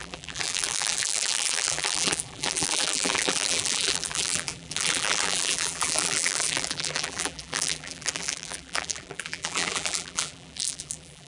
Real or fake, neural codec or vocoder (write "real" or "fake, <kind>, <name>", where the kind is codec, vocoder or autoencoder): fake, vocoder, BigVGAN v2